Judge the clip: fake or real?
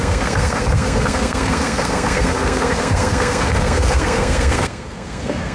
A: fake